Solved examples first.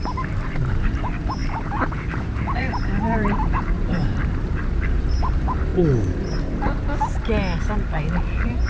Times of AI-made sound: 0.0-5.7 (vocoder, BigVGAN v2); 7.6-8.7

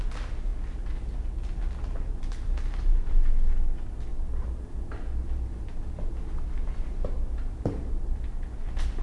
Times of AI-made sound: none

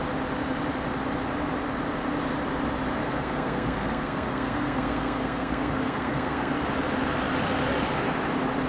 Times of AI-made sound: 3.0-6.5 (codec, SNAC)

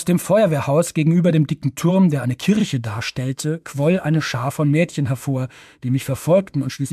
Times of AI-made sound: 2.6-6.9 (autoencoder, DAC-VAE)

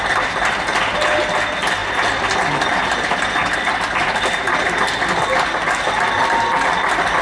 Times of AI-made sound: none